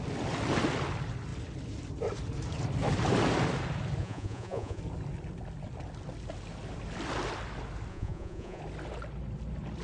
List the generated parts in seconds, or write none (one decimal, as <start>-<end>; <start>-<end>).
4.0-4.8; 7.9-8.6